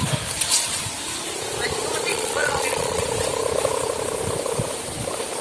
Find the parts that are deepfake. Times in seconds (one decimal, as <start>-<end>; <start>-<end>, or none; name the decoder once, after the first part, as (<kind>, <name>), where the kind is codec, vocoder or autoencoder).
2.1-3.0 (vocoder, Vocos)